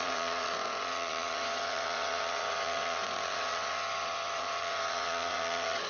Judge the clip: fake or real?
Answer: fake